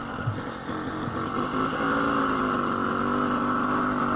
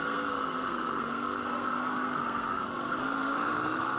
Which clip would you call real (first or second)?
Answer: first